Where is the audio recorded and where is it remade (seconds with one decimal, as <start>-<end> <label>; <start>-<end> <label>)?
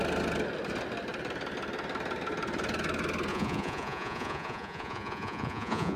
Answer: 0.0-3.3 recorded; 3.3-6.0 remade